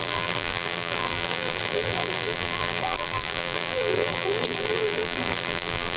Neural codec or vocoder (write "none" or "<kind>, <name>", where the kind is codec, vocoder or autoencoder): vocoder, BigVGAN v2